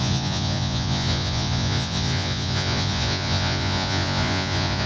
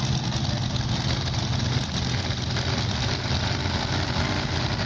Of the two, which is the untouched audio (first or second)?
second